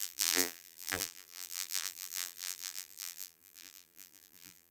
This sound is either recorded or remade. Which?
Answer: remade